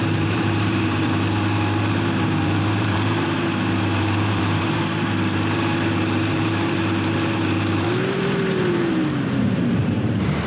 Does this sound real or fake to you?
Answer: fake